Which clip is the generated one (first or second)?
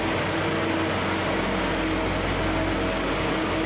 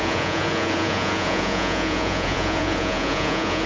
second